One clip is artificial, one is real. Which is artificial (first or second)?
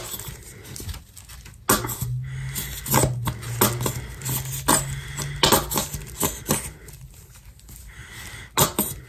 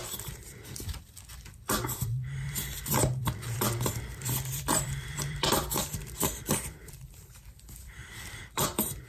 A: second